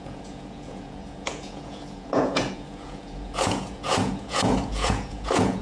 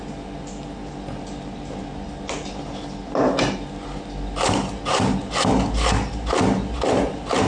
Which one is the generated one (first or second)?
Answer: first